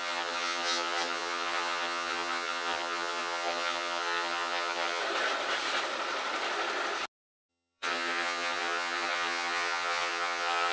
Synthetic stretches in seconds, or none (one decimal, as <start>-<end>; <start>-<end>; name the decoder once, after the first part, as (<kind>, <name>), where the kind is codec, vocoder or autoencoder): 0.0-5.0 (vocoder, HiFi-GAN); 7.5-10.7